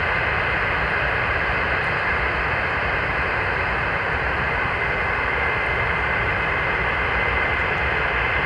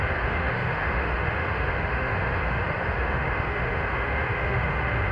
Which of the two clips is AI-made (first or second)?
second